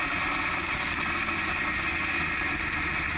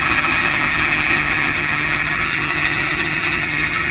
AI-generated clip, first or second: second